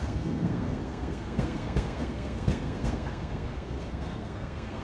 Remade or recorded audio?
remade